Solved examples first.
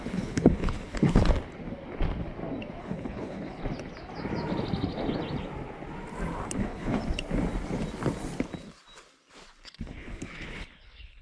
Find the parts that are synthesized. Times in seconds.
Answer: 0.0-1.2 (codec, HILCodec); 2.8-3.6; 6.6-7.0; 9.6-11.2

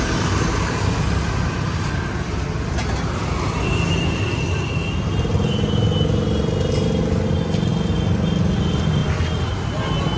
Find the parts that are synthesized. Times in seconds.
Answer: none

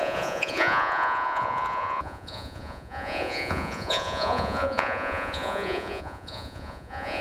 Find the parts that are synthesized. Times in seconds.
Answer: 0.0-7.2 (vocoder, Vocos)

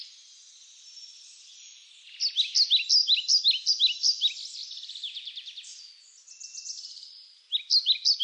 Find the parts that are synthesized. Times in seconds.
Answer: none